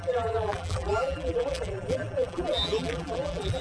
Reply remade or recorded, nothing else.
remade